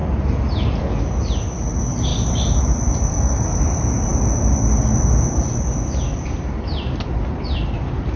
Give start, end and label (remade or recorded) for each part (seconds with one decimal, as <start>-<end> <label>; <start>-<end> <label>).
0.0-3.1 recorded; 3.1-3.6 remade; 3.6-8.2 recorded